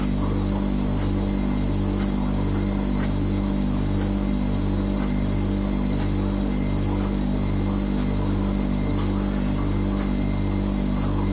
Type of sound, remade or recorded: recorded